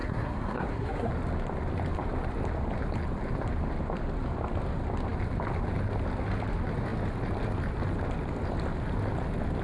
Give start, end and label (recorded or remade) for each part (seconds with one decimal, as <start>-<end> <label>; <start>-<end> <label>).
0.0-1.1 remade; 1.1-9.6 recorded